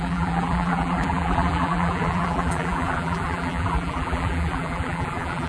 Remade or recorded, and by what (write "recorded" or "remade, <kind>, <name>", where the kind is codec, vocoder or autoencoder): remade, vocoder, BigVGAN v2